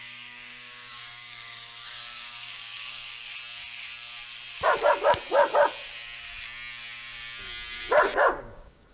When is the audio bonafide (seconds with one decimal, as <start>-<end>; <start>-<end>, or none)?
3.2-8.4